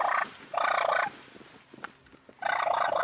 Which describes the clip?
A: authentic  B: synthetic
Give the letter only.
A